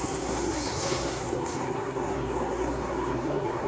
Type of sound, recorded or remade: remade